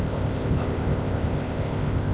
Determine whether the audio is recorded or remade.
remade